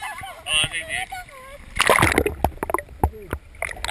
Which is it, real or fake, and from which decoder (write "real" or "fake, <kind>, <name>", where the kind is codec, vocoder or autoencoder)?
real